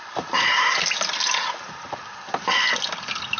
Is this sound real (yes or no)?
yes